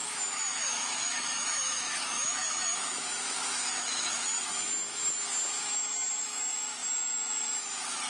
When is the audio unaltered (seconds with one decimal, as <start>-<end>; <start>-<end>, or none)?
5.0-5.6